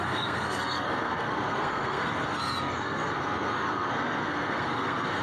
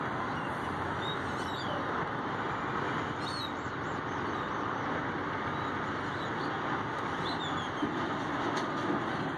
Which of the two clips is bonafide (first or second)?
second